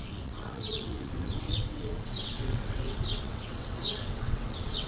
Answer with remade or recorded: remade